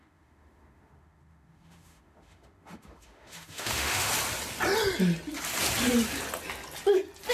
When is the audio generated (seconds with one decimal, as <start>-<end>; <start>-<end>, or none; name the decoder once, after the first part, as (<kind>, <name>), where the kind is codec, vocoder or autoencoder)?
0.0-4.1 (autoencoder, DAC-VAE)